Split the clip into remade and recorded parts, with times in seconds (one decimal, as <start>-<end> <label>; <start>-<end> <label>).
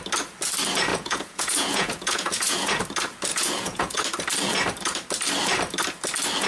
0.0-0.9 recorded; 0.9-2.8 remade; 2.8-3.3 recorded; 3.3-4.0 remade; 4.0-6.5 recorded